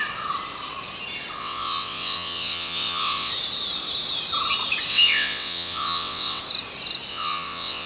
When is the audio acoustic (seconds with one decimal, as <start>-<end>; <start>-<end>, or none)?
0.0-1.4; 3.3-4.9; 6.4-7.1